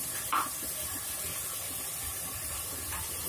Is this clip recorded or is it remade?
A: recorded